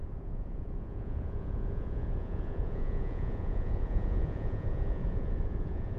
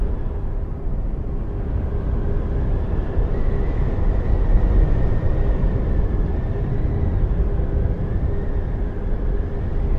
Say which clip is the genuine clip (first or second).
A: second